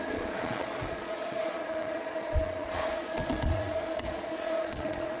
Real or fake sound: fake